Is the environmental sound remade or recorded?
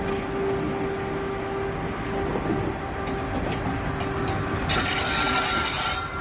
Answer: recorded